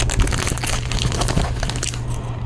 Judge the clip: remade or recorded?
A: recorded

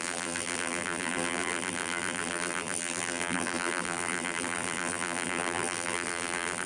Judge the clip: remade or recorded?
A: remade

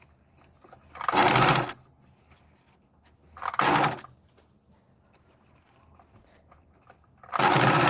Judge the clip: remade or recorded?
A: recorded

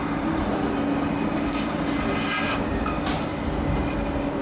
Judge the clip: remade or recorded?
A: recorded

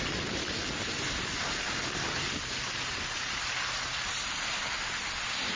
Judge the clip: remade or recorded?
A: recorded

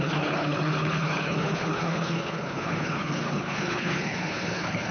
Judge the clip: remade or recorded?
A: remade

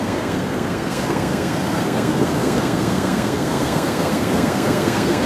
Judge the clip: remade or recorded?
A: remade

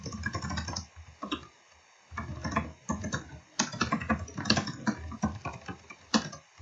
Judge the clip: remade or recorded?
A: recorded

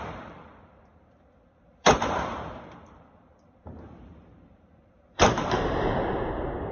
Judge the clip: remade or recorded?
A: remade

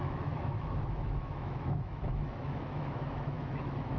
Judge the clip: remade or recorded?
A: remade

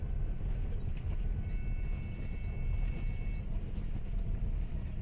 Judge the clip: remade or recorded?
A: recorded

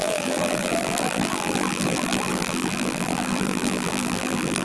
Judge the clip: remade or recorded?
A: remade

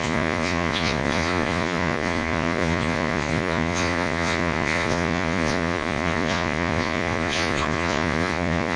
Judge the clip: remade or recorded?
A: remade